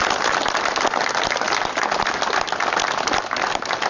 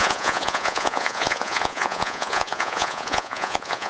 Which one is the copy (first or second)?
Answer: second